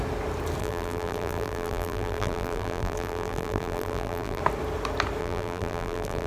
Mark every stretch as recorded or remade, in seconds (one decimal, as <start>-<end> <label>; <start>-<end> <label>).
0.0-0.6 recorded; 0.6-4.4 remade; 4.4-5.2 recorded; 5.2-6.3 remade